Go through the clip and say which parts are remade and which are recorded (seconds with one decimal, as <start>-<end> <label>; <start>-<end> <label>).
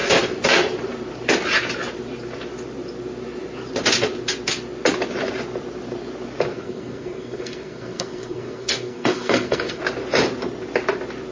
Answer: 0.0-6.5 recorded; 6.5-9.8 remade; 9.8-11.3 recorded